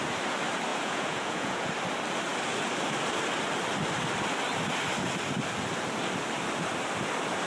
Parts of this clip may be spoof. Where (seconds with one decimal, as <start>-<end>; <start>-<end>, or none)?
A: 0.7-1.7